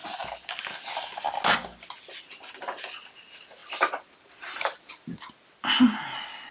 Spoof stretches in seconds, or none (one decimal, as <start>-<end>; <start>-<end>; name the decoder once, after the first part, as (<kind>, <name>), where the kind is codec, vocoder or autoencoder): 0.0-0.6 (vocoder, BigVGAN v2); 3.6-5.2